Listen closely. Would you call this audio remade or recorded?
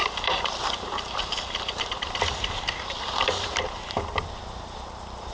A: recorded